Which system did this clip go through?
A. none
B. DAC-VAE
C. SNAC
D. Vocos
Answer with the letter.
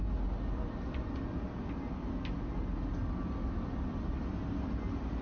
A